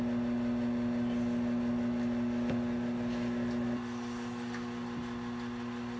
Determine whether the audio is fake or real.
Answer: real